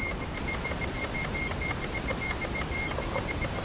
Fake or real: real